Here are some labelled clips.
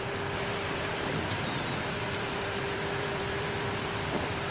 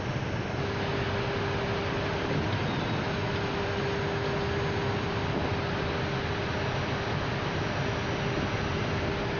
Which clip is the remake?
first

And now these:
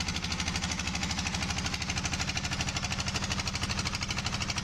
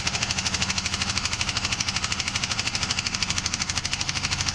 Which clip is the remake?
second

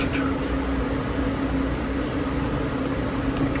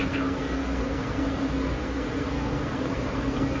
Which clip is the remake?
second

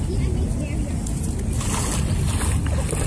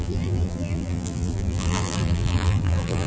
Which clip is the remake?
second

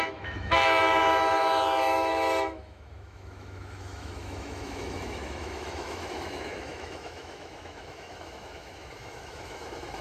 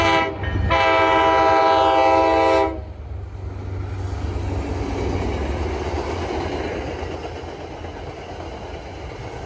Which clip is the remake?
first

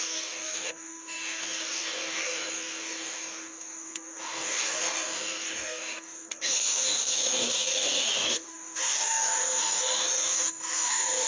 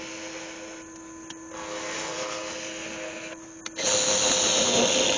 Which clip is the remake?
first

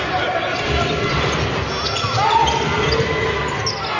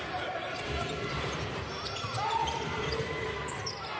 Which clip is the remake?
second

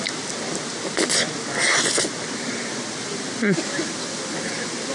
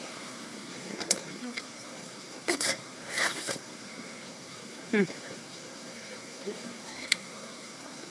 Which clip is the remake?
second